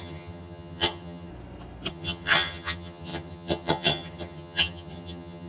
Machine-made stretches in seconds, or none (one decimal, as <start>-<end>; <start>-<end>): 0.0-1.3; 1.9-5.5